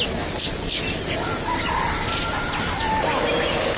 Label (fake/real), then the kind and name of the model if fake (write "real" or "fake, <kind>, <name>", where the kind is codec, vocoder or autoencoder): real